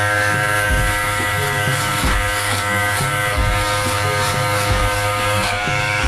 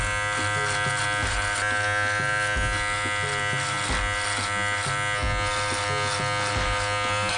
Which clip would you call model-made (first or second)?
first